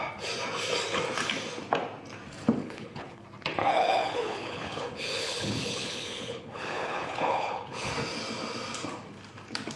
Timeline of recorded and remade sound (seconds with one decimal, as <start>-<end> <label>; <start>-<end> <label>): 0.0-2.6 recorded; 2.6-3.2 remade; 3.2-3.6 recorded; 3.6-7.9 remade; 7.9-9.8 recorded